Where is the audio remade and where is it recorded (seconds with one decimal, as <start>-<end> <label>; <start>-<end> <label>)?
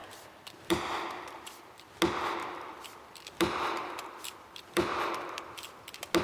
0.0-1.9 remade; 1.9-2.4 recorded; 2.4-5.4 remade; 5.4-6.2 recorded